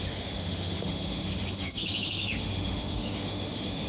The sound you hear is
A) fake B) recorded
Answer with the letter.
A